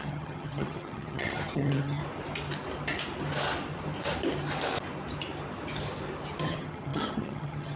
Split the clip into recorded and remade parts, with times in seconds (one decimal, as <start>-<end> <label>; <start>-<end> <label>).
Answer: 0.0-2.0 remade; 2.0-6.4 recorded; 6.4-7.8 remade